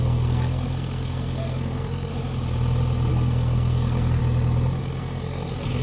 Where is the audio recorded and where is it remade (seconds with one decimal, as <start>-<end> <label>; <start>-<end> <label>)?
0.0-2.1 remade; 2.1-3.1 recorded; 3.1-4.2 remade; 4.2-4.8 recorded; 4.8-5.8 remade